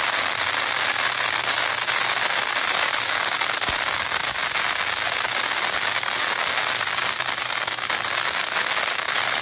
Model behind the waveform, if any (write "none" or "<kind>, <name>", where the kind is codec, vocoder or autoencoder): none